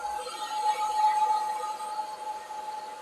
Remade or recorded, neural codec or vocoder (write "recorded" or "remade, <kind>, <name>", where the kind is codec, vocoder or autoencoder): recorded